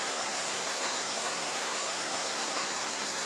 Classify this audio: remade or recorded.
remade